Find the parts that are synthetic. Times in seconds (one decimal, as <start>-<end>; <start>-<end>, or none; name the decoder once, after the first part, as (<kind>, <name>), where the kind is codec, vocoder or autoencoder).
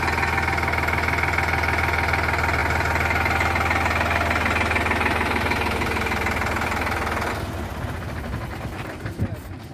none